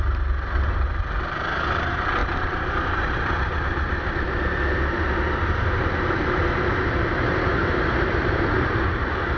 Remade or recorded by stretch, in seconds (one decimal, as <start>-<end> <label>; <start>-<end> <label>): 0.0-7.6 recorded; 7.6-8.8 remade; 8.8-9.4 recorded